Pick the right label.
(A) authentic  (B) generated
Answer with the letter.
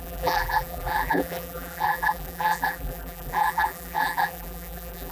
B